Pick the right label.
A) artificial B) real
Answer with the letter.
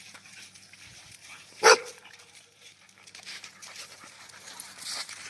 A